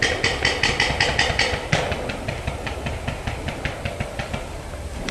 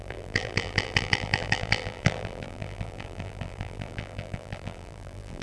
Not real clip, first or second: second